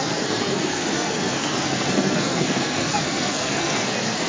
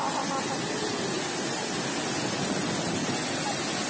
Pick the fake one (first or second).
first